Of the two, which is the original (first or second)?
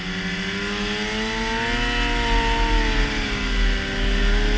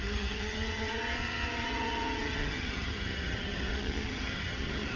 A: first